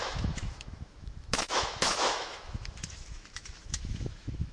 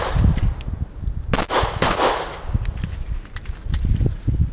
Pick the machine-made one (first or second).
first